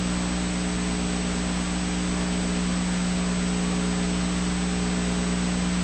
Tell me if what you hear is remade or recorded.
recorded